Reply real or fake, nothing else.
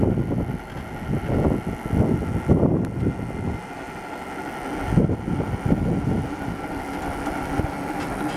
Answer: real